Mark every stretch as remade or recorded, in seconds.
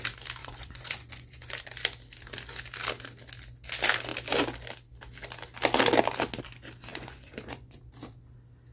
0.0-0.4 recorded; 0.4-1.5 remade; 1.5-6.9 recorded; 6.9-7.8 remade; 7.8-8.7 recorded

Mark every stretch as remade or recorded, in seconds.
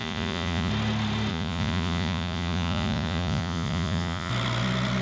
0.0-0.7 remade; 0.7-1.3 recorded; 1.3-4.3 remade; 4.3-5.0 recorded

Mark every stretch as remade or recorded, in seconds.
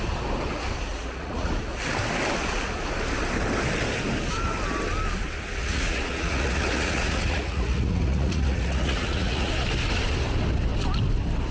0.0-0.9 recorded; 0.9-1.5 remade; 1.5-5.6 recorded; 5.6-9.5 remade; 9.5-11.5 recorded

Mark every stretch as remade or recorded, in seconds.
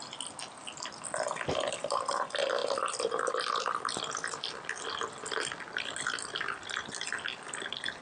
0.0-8.0 recorded